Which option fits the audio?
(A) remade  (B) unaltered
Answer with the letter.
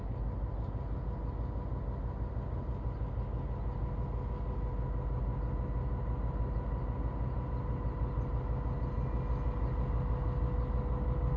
B